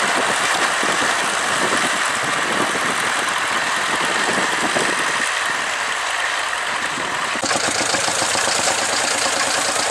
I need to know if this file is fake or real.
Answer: real